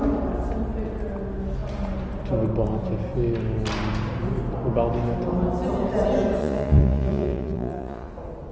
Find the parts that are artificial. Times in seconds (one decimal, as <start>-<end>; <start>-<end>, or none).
6.4-8.1